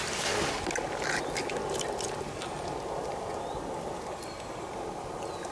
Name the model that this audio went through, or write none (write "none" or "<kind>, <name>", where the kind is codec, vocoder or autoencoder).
none